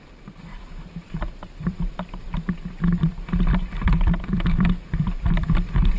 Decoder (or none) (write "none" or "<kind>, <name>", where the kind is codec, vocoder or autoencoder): vocoder, BigVGAN v2